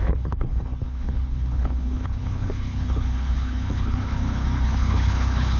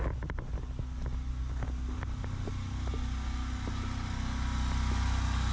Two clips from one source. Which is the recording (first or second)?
second